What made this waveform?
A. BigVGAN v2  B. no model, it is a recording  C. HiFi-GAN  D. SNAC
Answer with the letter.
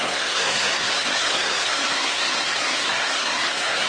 D